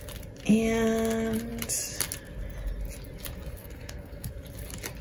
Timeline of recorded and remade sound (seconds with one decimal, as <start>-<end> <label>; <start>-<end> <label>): 0.0-3.6 recorded; 3.6-4.3 remade; 4.3-5.0 recorded